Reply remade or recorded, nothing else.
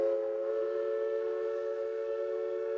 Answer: remade